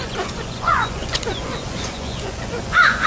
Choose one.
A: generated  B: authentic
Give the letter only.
A